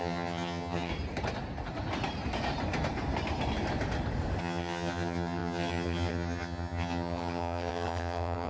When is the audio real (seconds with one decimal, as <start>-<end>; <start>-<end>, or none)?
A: 0.9-4.4